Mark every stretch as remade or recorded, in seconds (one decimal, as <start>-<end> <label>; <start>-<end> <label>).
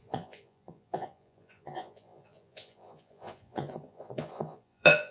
0.0-5.1 remade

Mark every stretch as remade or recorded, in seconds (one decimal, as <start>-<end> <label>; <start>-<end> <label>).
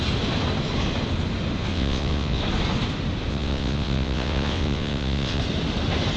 0.0-1.7 recorded; 1.7-2.4 remade; 2.4-3.3 recorded; 3.3-5.4 remade; 5.4-6.2 recorded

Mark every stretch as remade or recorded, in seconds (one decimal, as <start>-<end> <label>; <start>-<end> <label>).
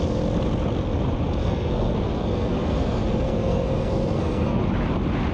0.0-1.4 recorded; 1.4-4.6 remade; 4.6-5.3 recorded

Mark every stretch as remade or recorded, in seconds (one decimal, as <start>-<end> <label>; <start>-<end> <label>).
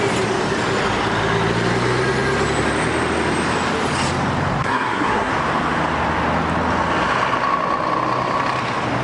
0.0-4.6 recorded; 4.6-5.3 remade; 5.3-9.0 recorded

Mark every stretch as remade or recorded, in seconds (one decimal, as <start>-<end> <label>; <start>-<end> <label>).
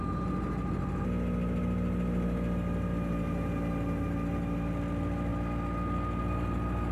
0.0-6.9 recorded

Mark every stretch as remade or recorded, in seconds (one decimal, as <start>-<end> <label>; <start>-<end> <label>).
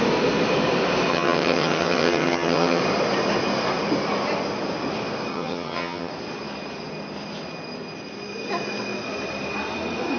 0.0-1.1 recorded; 1.1-2.8 remade; 2.8-5.3 recorded; 5.3-6.1 remade; 6.1-10.2 recorded